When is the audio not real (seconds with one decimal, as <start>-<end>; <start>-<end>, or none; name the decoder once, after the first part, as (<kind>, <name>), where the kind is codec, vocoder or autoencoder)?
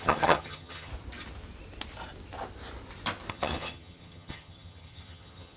0.0-0.9 (vocoder, HiFi-GAN); 3.3-5.6